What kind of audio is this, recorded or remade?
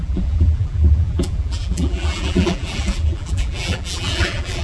remade